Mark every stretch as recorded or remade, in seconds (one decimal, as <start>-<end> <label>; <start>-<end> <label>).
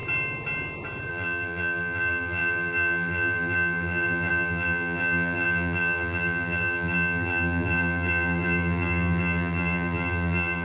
0.0-1.1 recorded; 1.1-10.6 remade